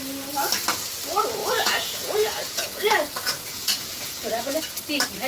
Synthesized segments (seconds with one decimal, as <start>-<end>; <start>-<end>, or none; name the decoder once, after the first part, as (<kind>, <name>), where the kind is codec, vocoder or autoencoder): 1.4-4.6 (vocoder, Vocos)